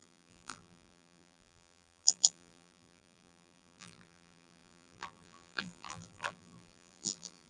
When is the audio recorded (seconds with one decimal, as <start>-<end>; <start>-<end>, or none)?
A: none